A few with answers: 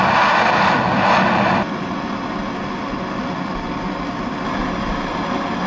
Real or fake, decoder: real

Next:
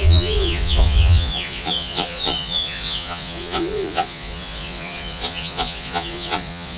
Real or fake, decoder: fake, vocoder, Vocos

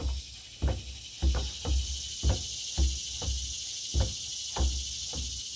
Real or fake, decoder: real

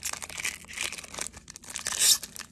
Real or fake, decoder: real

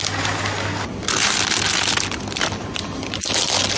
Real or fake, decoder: real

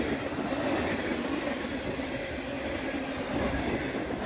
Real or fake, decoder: real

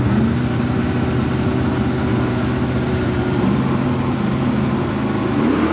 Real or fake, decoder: real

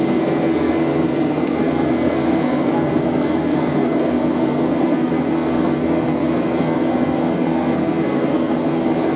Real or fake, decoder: fake, codec, SNAC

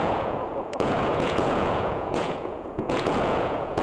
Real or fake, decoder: fake, vocoder, Vocos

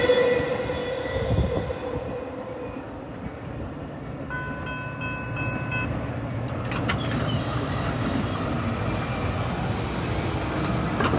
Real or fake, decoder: real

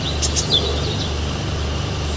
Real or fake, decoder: real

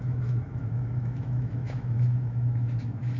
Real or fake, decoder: fake, autoencoder, DAC-VAE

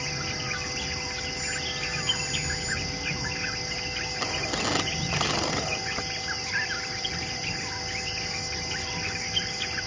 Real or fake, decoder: real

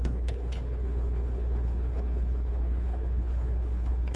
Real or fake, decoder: fake, codec, HILCodec